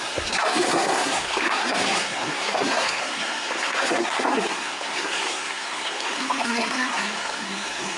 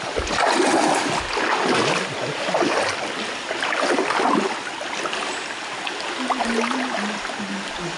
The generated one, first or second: first